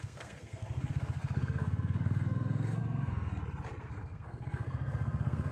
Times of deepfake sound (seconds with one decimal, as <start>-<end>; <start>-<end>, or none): 0.0-3.3; 3.8-5.5